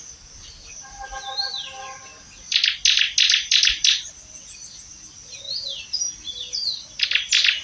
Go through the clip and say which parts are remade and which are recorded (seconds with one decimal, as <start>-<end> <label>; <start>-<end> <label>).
0.0-7.6 recorded